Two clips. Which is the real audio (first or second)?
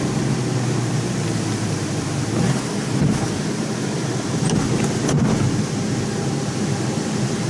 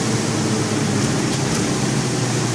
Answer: second